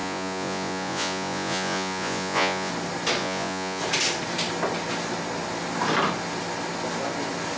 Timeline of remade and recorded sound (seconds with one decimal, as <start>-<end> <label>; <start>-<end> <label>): 0.0-2.7 remade; 2.7-3.2 recorded; 3.2-3.8 remade; 3.8-7.6 recorded